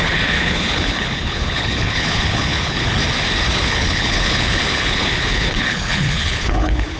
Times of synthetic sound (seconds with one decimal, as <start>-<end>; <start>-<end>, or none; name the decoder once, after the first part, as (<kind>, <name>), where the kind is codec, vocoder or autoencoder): 0.0-3.0 (codec, HILCodec); 3.5-7.0